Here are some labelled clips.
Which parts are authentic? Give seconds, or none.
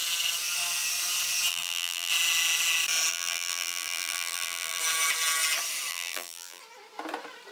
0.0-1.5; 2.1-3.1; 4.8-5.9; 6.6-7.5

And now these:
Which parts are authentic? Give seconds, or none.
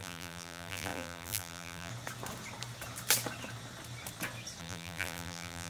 1.9-4.6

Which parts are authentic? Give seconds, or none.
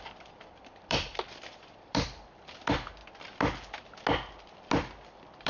3.0-5.1